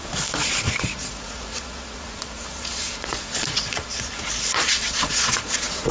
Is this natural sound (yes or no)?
no